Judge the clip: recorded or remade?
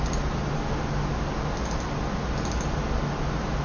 recorded